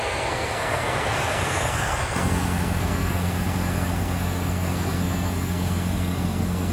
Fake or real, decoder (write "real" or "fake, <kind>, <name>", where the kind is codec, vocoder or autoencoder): fake, codec, SNAC